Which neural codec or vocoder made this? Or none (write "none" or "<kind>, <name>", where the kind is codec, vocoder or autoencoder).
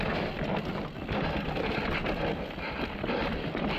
none